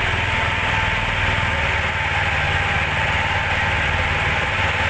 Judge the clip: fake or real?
real